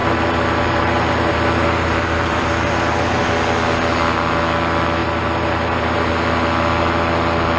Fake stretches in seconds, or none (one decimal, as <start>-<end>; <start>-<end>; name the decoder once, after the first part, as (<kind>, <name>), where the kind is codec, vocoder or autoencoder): 0.0-3.3 (vocoder, BigVGAN v2); 5.0-6.1